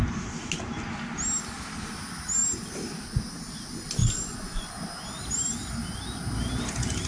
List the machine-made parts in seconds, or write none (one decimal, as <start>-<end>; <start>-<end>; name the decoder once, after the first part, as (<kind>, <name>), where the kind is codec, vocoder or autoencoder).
4.0-4.7 (vocoder, Vocos)